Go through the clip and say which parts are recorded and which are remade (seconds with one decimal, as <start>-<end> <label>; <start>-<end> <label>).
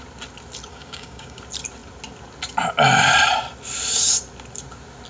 0.0-0.7 recorded; 0.7-1.4 remade; 1.4-5.1 recorded